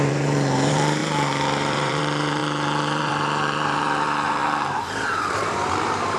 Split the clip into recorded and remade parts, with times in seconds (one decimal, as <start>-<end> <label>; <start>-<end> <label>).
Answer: 0.0-6.2 remade